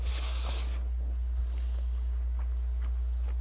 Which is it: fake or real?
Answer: real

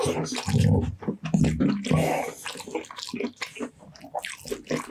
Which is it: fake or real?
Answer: real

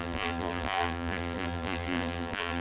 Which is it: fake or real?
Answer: fake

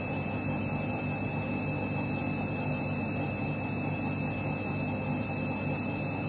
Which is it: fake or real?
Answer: real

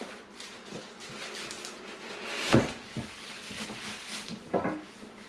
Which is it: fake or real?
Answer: real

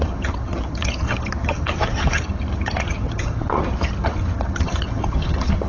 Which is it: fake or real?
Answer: fake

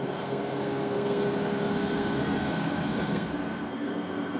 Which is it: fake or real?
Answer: fake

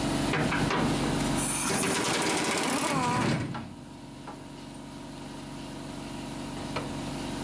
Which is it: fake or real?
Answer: real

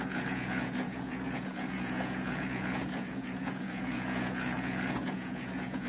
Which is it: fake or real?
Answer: fake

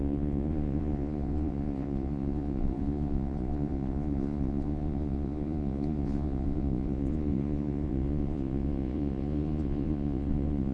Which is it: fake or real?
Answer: fake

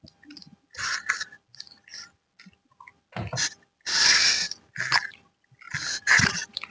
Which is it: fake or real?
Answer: real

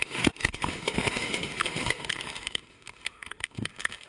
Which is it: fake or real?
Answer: fake